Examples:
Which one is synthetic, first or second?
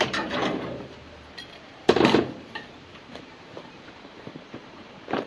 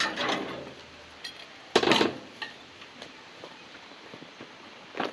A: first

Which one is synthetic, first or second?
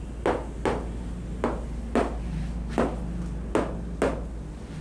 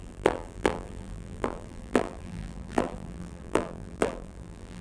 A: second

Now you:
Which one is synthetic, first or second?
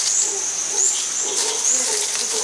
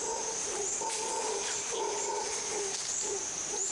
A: second